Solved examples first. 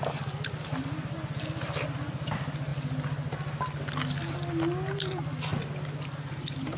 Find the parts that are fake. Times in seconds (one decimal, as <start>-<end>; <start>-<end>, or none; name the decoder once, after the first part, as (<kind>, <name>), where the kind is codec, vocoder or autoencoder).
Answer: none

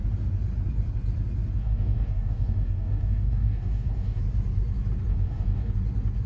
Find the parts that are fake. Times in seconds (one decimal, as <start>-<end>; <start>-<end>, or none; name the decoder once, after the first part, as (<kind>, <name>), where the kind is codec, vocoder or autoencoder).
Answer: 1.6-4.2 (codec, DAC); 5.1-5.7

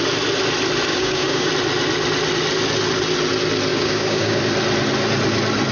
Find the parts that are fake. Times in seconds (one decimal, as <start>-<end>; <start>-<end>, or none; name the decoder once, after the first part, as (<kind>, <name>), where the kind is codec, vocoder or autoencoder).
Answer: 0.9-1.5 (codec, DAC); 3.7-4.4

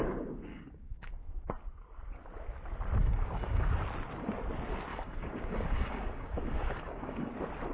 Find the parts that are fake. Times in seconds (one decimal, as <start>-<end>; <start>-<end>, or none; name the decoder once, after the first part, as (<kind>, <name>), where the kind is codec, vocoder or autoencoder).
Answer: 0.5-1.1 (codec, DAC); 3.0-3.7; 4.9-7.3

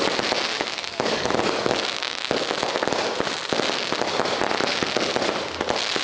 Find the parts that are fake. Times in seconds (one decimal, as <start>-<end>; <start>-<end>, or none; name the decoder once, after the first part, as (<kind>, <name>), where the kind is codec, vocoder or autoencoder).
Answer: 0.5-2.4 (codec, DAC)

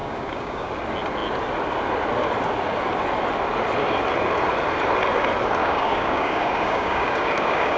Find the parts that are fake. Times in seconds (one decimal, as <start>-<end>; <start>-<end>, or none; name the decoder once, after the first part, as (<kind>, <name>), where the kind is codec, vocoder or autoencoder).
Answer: 0.0-0.7 (codec, DAC); 5.6-7.8

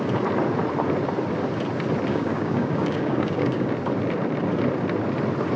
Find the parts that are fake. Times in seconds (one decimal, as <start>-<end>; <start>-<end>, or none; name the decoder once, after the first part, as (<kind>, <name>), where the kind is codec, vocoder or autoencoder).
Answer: 2.1-3.7 (codec, DAC)